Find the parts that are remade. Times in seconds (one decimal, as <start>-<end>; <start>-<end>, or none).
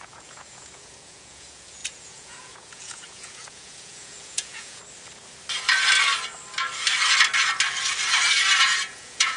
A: 0.0-4.8; 8.8-9.4